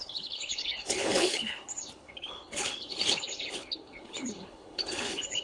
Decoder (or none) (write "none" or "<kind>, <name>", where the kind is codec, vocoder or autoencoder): codec, HILCodec